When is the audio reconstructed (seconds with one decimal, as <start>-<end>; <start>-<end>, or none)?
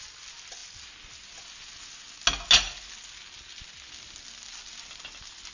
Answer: none